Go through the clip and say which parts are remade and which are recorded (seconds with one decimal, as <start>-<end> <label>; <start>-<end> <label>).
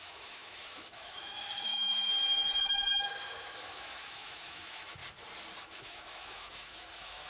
0.0-2.1 remade; 2.1-2.6 recorded; 2.6-5.0 remade; 5.0-5.6 recorded; 5.6-7.3 remade